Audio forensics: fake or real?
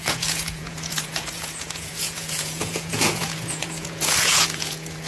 fake